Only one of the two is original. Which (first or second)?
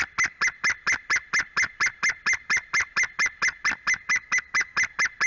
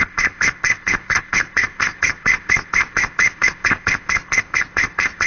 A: first